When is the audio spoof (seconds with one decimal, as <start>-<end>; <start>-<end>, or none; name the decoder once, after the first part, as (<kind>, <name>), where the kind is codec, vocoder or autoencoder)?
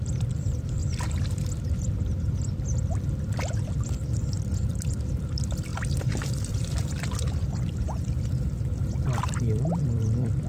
0.0-0.8 (vocoder, BigVGAN v2); 3.2-5.7; 6.3-10.5